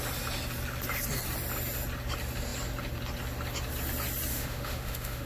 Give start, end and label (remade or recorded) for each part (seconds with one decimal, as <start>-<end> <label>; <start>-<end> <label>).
0.0-4.3 recorded; 4.3-5.3 remade